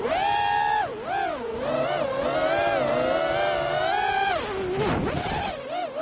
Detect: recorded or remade recorded